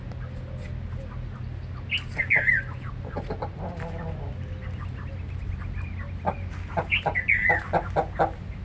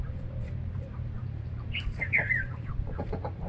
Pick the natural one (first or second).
first